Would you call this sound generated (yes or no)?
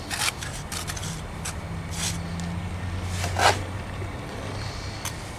no